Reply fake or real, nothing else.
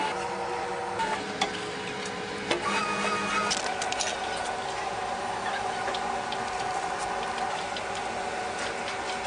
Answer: real